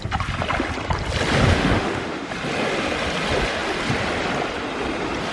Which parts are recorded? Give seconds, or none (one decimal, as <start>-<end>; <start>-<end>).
0.0-1.5; 2.3-5.3